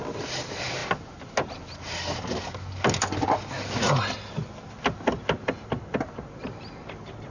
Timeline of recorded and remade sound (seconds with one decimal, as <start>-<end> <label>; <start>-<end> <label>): 0.0-7.3 recorded